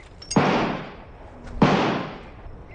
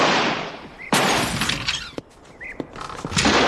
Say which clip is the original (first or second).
first